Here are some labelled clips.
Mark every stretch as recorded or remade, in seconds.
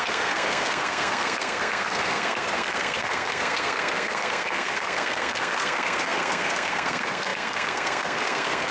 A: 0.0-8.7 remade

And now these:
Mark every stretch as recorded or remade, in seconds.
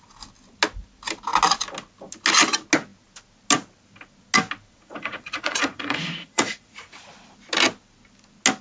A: 0.0-4.7 recorded; 4.7-7.0 remade; 7.0-8.6 recorded